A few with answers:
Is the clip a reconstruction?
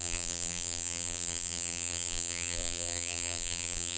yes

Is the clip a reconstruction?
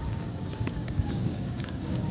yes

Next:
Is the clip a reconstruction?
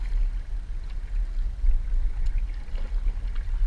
no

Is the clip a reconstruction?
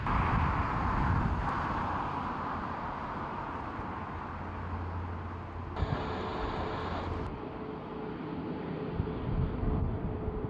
no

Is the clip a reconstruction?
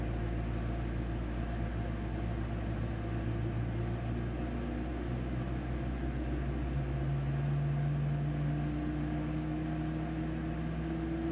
no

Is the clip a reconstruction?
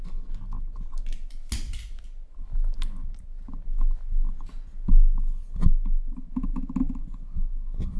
no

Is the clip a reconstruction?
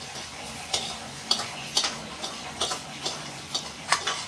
yes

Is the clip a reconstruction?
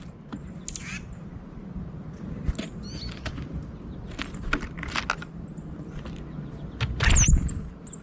no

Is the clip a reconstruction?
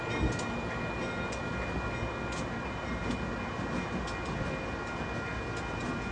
no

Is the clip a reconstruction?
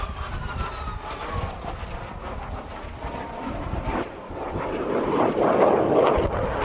no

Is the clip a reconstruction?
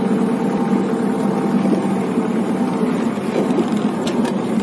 no